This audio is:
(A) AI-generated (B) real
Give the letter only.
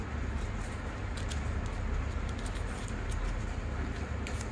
B